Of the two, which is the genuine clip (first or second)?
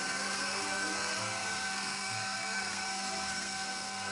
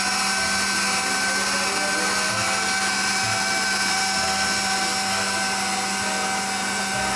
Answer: second